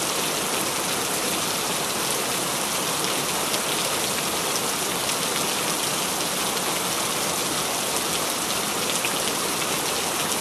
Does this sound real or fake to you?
real